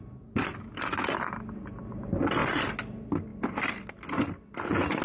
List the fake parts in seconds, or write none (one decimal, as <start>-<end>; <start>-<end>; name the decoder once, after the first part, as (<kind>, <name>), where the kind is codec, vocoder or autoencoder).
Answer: none